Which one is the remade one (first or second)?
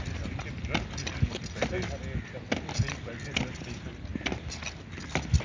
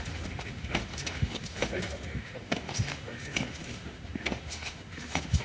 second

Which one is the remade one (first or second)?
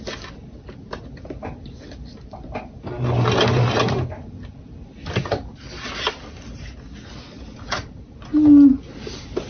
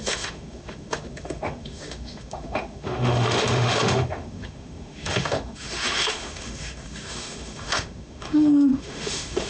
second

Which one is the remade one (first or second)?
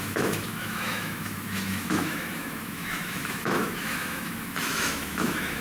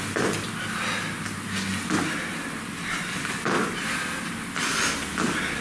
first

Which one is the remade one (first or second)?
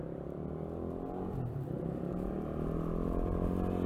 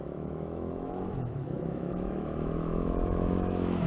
second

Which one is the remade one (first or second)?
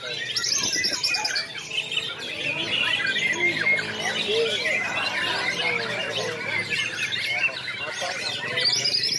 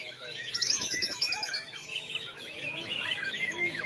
second